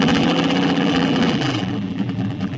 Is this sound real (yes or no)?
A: no